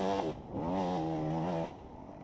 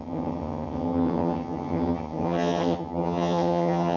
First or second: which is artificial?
second